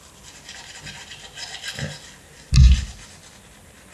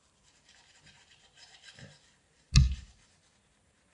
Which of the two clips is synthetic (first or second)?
second